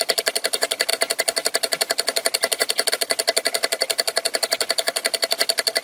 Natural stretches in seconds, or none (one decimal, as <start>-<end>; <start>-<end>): 0.0-5.8